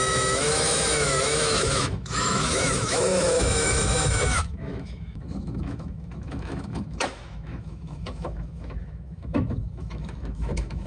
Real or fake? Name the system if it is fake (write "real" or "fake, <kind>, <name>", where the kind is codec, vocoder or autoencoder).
fake, autoencoder, DAC-VAE